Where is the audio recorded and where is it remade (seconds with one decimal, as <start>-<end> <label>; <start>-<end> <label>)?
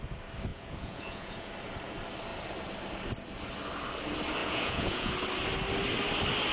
0.0-0.5 recorded; 0.5-1.5 remade; 1.5-4.4 recorded; 4.4-5.1 remade; 5.1-6.5 recorded